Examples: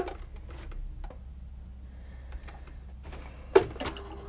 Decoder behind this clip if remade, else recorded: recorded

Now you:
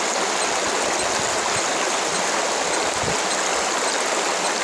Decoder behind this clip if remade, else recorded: recorded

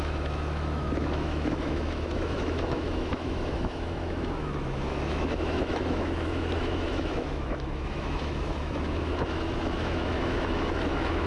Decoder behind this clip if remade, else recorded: remade, autoencoder, DAC-VAE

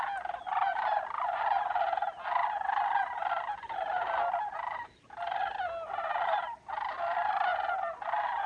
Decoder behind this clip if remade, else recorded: recorded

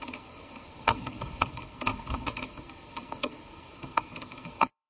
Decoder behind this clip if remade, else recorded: remade, codec, SNAC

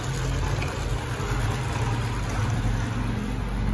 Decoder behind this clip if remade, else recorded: recorded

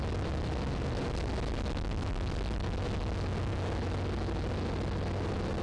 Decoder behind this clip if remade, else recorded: recorded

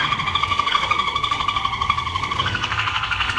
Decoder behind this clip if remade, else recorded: remade, codec, SNAC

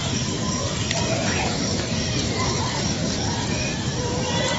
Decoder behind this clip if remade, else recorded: remade, vocoder, BigVGAN v2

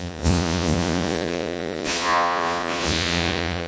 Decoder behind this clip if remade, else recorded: remade, vocoder, Vocos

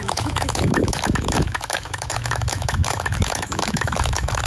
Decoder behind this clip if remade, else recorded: remade, autoencoder, DAC-VAE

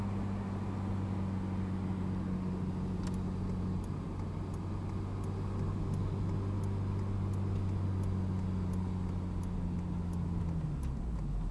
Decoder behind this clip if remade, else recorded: recorded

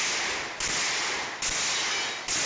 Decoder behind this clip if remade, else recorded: recorded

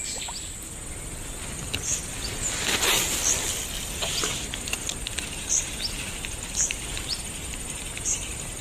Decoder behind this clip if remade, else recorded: recorded